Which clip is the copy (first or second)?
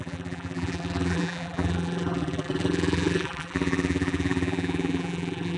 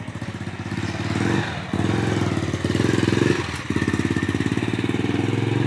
first